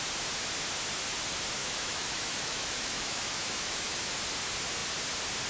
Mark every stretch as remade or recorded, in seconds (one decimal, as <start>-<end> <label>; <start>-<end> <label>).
0.0-1.6 recorded; 1.6-4.2 remade; 4.2-5.5 recorded